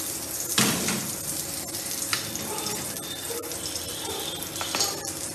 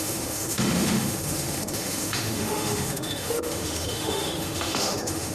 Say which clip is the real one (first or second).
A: first